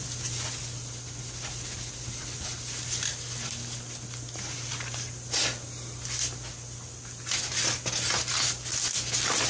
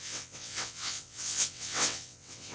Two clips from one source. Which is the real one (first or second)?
first